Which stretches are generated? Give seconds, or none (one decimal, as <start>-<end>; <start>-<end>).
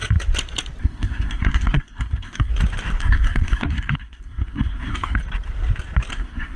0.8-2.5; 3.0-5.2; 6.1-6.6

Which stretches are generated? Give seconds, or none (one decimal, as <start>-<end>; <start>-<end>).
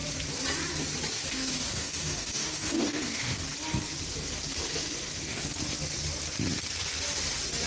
1.3-3.4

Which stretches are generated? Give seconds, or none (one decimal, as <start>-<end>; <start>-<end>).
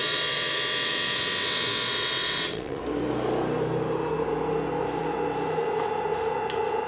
0.0-2.8